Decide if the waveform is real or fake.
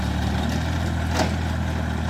real